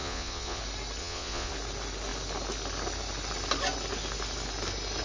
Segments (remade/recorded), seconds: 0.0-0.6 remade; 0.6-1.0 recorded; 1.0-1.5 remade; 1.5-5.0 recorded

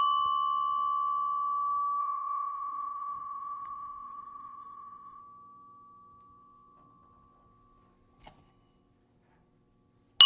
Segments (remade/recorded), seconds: 0.0-2.0 recorded; 2.0-5.2 remade; 5.2-10.3 recorded

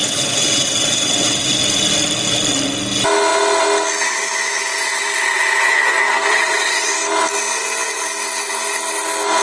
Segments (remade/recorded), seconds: 0.0-1.5 remade; 1.5-6.3 recorded; 6.3-6.9 remade; 6.9-9.4 recorded

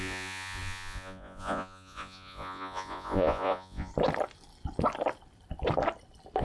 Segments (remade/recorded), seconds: 0.0-3.9 remade; 3.9-6.4 recorded

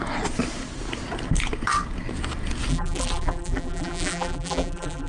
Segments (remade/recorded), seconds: 0.0-2.7 recorded; 2.7-5.1 remade